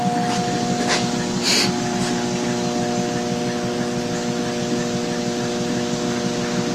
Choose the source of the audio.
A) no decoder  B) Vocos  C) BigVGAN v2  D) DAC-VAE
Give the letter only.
A